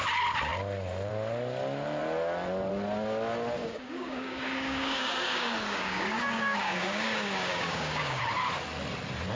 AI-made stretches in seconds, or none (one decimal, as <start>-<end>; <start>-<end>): 3.6-8.2